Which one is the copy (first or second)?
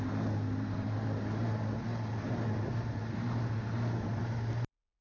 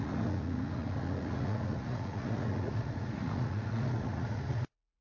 second